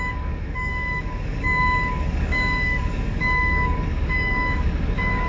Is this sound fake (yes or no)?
yes